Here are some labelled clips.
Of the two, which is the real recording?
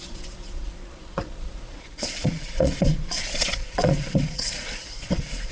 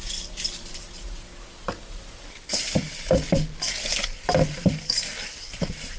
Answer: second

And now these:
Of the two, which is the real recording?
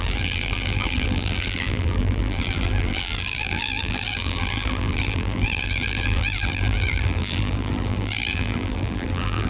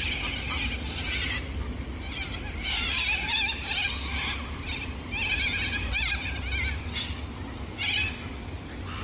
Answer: second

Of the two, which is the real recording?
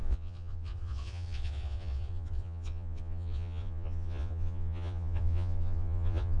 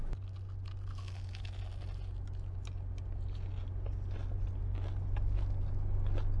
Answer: second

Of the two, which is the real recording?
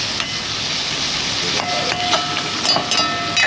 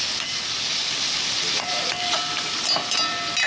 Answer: first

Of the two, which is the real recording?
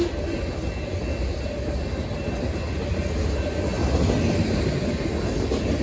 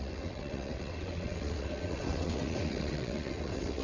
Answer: first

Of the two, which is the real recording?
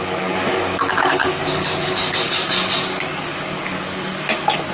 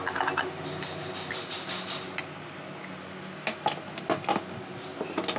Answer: second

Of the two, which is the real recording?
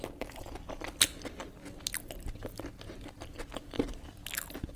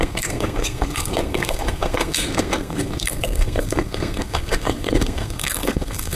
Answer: first